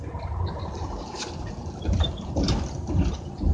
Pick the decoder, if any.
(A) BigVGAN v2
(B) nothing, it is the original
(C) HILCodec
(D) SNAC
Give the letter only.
B